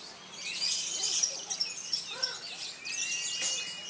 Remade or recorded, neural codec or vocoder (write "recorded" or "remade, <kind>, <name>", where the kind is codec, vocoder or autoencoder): recorded